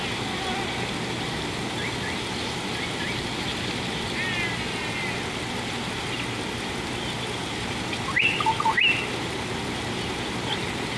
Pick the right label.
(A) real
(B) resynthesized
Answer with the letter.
A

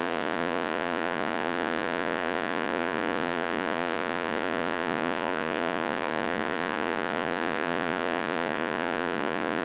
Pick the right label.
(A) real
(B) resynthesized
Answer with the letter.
B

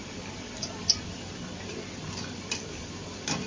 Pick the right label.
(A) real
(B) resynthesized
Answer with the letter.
A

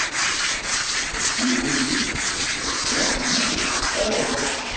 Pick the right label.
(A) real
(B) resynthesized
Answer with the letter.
B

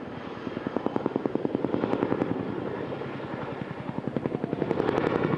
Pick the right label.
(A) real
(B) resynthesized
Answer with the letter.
A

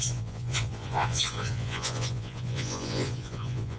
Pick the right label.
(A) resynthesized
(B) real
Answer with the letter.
A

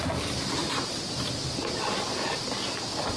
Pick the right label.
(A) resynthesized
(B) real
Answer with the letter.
B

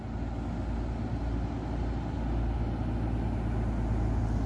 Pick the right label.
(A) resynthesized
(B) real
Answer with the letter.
B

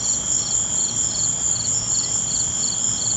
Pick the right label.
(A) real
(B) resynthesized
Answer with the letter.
A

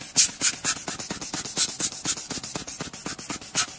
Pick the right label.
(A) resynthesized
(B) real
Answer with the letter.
B